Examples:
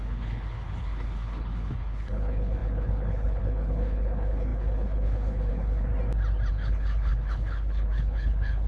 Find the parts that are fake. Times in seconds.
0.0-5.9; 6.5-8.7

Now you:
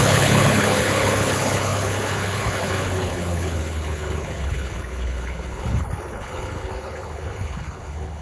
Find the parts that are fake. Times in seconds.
0.0-8.2

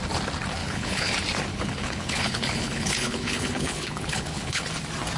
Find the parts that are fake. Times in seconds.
0.6-1.1; 1.5-4.6

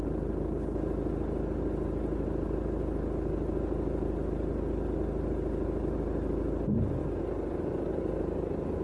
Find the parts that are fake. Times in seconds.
none